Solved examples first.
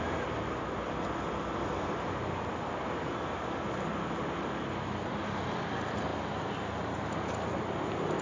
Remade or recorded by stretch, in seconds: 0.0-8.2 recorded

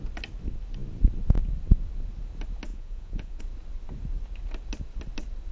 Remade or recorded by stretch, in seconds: 0.0-2.7 recorded; 2.7-3.4 remade; 3.4-5.5 recorded

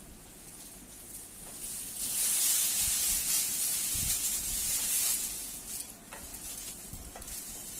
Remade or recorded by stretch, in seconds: 0.0-7.8 remade

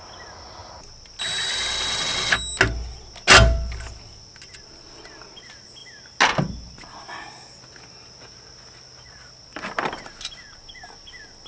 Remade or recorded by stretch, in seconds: 0.0-11.5 recorded

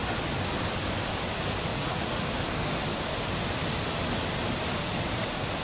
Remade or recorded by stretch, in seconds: 0.0-1.7 recorded; 1.7-2.3 remade; 2.3-5.6 recorded

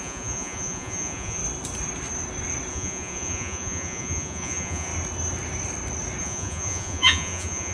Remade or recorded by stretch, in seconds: 0.0-1.4 remade; 1.4-2.7 recorded; 2.7-4.9 remade; 4.9-6.2 recorded; 6.2-7.7 remade

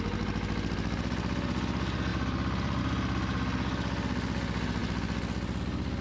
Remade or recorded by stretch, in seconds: 0.0-6.0 recorded